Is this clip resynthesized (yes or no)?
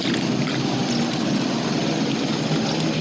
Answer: no